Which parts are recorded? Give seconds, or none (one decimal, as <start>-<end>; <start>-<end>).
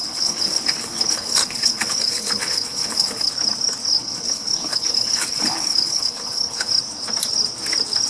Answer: 3.3-4.0; 6.7-8.1